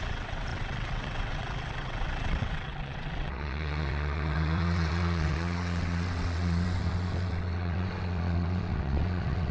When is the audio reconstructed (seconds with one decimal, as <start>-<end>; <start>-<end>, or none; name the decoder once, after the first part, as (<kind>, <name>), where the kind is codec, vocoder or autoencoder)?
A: 0.0-9.5 (vocoder, WaveNeXt)